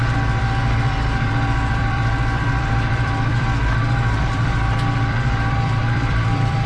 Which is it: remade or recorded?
remade